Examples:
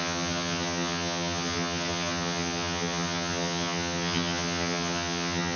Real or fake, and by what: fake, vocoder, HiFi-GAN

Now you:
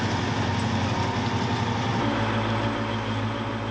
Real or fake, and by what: real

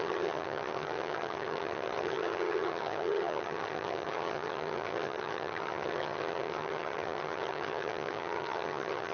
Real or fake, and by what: fake, vocoder, HiFi-GAN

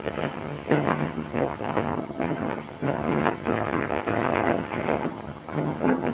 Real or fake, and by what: fake, vocoder, HiFi-GAN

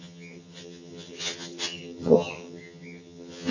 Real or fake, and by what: fake, vocoder, HiFi-GAN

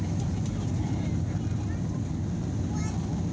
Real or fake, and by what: real